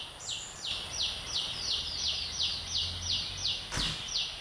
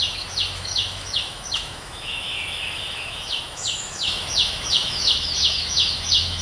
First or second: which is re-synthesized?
second